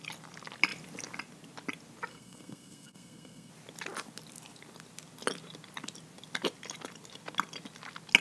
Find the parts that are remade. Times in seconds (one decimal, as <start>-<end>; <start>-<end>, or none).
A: 2.1-3.5